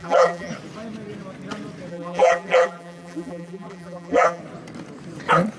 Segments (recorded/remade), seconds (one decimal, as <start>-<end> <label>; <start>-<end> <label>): 0.0-0.5 remade; 0.5-1.9 recorded; 1.9-4.4 remade; 4.4-5.6 recorded